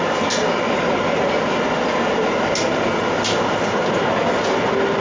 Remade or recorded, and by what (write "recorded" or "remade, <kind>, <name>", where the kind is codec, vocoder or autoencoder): recorded